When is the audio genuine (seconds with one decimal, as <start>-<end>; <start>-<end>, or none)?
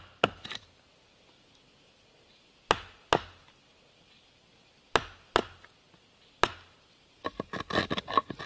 0.0-8.5